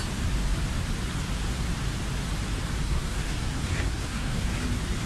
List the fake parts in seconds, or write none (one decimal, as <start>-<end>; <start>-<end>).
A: 2.8-4.5